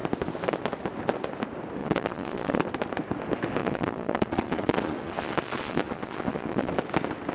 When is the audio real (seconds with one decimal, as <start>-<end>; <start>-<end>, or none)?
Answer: 0.0-1.8; 2.6-3.6; 6.7-7.3